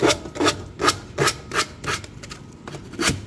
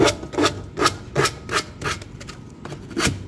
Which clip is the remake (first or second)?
first